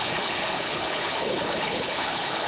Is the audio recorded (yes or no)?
no